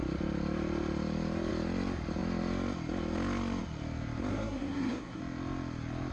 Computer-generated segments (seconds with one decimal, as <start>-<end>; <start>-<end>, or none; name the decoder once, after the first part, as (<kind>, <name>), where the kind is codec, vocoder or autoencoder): 4.3-5.2 (codec, SNAC)